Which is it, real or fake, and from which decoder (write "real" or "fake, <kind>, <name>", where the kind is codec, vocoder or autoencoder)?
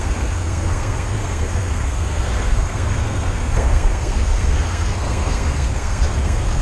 fake, codec, SNAC